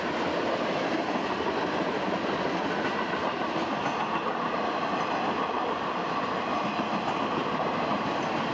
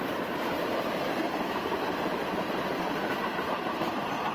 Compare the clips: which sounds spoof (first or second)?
second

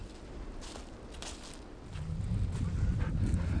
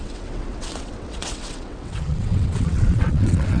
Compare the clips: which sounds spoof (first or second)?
second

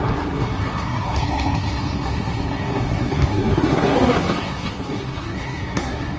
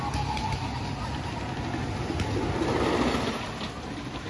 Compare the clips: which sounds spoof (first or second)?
first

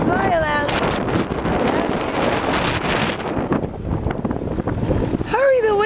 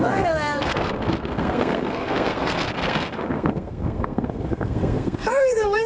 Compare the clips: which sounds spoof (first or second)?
second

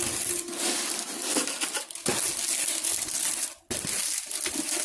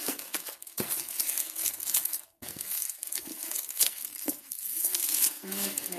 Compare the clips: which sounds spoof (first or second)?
second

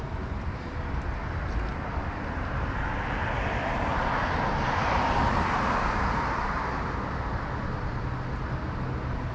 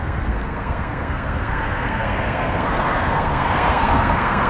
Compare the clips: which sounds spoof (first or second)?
second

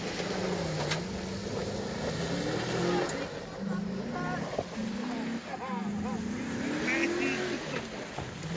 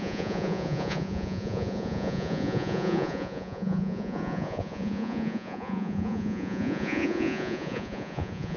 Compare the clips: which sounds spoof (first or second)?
second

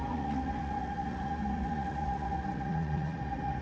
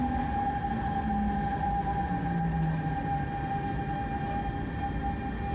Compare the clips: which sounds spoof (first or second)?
first